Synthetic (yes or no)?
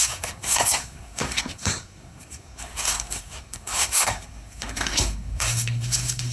yes